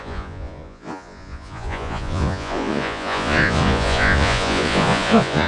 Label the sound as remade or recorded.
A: remade